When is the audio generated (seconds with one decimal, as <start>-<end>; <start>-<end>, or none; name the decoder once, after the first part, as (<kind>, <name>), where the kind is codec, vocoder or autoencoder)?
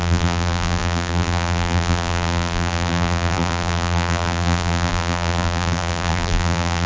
0.0-6.9 (vocoder, BigVGAN v2)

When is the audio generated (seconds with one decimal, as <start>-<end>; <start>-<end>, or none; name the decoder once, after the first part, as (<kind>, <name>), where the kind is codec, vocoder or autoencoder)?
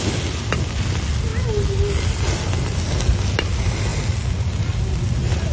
none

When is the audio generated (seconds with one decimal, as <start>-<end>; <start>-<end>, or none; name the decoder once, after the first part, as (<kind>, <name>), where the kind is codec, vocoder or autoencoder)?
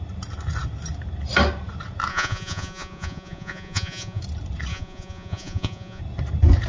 2.1-4.2 (vocoder, Vocos); 4.7-6.0